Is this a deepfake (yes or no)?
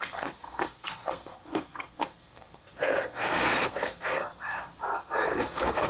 yes